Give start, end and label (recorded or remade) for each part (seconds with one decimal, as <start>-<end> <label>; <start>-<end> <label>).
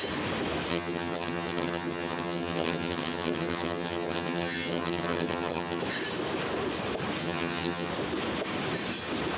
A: 0.0-0.7 recorded; 0.7-5.8 remade; 5.8-7.2 recorded; 7.2-7.9 remade; 7.9-9.4 recorded